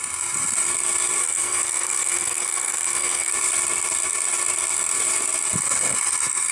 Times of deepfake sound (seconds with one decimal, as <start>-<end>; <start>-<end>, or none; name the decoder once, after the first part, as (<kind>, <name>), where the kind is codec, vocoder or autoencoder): 1.2-3.3 (codec, SNAC)